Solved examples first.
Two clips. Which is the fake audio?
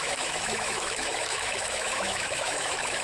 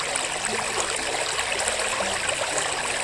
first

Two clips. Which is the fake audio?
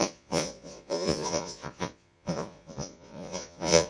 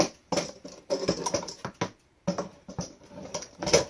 first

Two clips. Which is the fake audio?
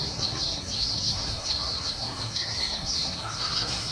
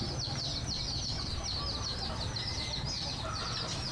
first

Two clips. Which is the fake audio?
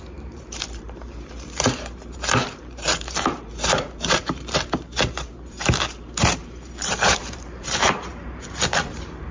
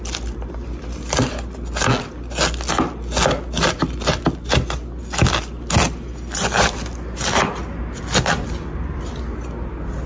first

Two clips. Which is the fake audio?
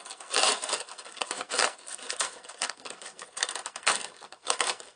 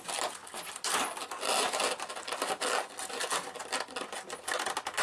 first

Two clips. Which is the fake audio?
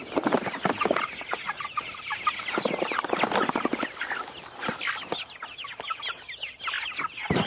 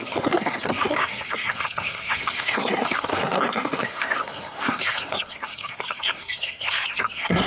second